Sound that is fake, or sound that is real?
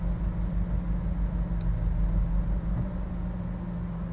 real